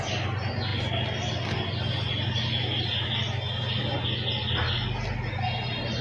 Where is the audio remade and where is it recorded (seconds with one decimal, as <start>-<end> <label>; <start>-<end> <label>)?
0.0-6.0 recorded